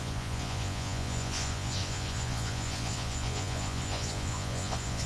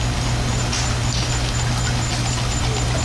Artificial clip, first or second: first